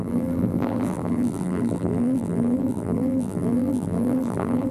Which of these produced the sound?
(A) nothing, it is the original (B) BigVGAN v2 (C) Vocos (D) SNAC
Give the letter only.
B